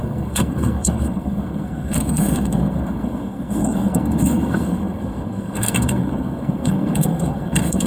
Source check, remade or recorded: remade